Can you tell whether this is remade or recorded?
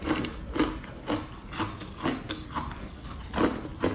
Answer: recorded